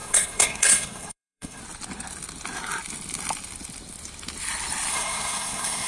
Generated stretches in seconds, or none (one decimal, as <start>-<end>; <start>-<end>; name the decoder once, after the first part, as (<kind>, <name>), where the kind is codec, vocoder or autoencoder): 0.0-1.6 (codec, SNAC); 4.9-5.9